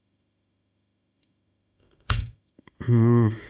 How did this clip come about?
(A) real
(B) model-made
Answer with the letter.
B